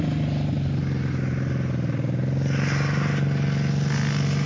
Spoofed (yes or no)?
no